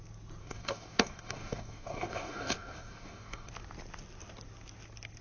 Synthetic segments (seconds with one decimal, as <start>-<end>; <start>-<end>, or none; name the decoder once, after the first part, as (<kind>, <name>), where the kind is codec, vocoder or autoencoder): 0.4-3.5 (codec, DAC)